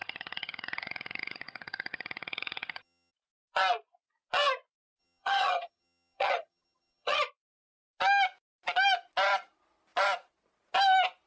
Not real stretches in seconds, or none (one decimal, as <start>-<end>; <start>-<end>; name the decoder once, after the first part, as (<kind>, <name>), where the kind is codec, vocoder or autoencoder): 0.0-3.1 (vocoder, HiFi-GAN); 5.0-7.2